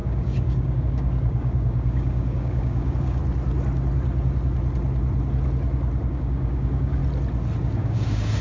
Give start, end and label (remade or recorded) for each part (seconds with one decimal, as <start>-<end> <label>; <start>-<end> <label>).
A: 0.0-3.2 remade; 3.2-6.1 recorded; 6.1-7.0 remade; 7.0-7.6 recorded; 7.6-8.4 remade